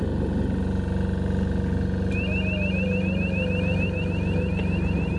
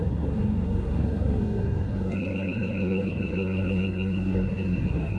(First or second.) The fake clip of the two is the second